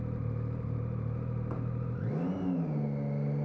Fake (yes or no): no